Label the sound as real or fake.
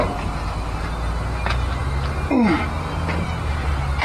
real